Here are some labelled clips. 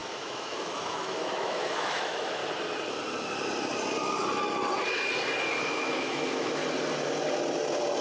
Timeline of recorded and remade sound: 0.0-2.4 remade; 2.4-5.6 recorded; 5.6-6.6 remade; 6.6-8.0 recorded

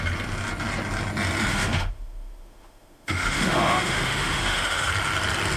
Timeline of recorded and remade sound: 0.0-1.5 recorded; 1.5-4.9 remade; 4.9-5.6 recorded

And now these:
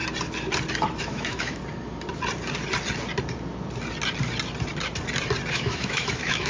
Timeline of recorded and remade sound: 0.0-1.0 recorded; 1.0-1.6 remade; 1.6-5.5 recorded; 5.5-6.5 remade

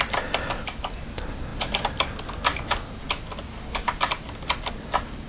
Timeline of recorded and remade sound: 0.0-5.3 recorded